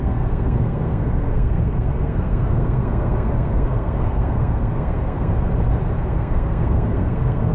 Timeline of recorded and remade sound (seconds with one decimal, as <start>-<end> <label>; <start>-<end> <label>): 0.0-5.3 remade; 5.3-6.0 recorded; 6.0-7.5 remade